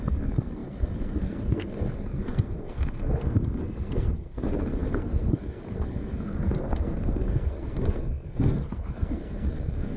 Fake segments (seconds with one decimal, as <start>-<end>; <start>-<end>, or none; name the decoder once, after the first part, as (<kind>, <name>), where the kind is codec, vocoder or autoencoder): 0.0-10.0 (codec, SNAC)